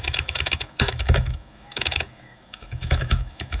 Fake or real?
fake